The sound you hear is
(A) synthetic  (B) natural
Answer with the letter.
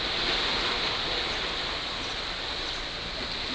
B